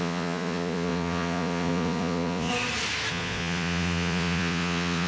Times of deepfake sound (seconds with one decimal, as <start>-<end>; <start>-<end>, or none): 0.0-2.5; 3.1-5.1